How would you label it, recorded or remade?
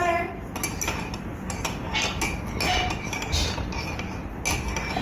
recorded